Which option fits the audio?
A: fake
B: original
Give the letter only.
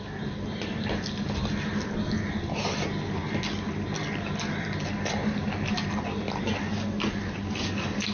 B